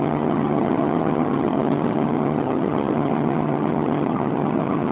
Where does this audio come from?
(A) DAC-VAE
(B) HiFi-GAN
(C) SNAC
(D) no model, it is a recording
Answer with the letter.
B